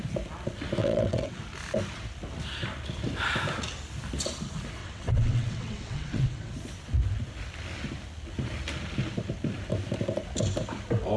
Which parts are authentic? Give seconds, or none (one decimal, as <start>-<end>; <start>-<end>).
0.0-0.8; 1.4-4.8; 6.5-11.2